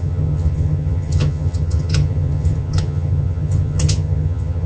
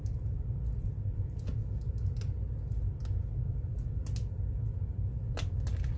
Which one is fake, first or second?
first